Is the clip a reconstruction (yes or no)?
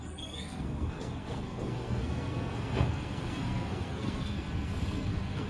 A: yes